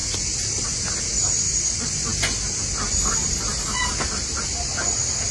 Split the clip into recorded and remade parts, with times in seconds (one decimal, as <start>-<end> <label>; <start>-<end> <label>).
0.0-5.3 recorded